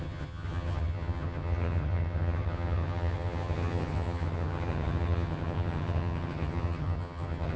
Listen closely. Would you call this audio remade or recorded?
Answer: remade